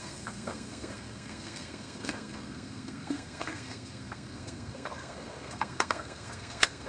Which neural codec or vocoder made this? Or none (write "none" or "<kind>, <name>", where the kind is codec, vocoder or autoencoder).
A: codec, SNAC